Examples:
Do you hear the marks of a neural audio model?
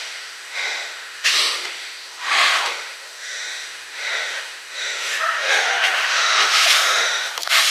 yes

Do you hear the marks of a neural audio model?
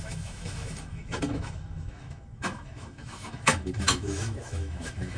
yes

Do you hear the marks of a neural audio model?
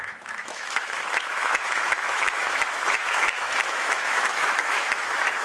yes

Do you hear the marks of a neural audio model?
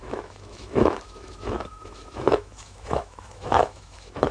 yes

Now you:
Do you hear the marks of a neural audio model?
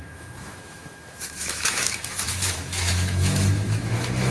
yes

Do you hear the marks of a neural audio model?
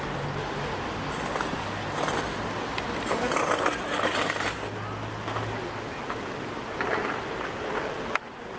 no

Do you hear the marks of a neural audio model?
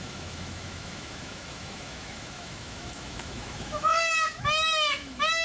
yes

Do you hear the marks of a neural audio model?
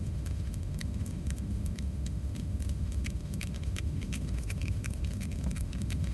yes